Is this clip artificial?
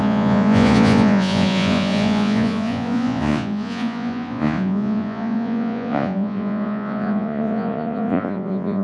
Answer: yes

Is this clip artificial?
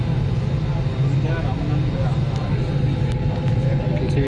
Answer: no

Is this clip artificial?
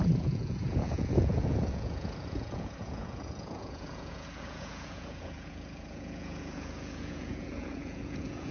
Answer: yes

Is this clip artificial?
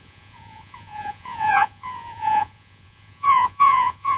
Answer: yes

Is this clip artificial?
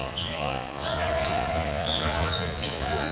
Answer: yes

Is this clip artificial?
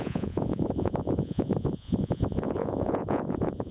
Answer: yes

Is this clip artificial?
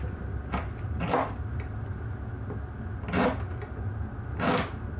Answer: no